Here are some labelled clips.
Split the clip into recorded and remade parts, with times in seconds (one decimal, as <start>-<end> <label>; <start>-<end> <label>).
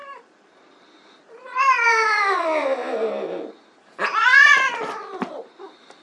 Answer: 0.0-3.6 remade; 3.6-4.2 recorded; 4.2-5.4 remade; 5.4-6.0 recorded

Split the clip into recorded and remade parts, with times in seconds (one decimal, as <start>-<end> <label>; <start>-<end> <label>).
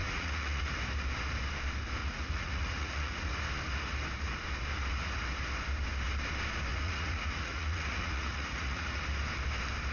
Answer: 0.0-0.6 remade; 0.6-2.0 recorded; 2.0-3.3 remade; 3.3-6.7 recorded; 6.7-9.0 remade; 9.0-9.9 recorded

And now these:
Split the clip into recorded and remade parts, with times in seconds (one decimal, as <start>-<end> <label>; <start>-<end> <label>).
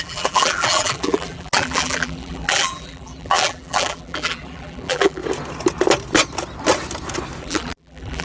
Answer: 0.0-5.2 remade; 5.2-7.4 recorded; 7.4-8.2 remade